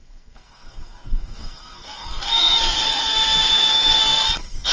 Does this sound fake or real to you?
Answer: fake